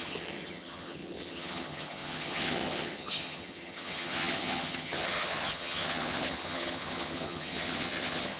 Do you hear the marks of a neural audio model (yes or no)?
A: yes